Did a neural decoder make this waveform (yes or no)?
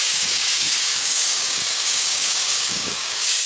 yes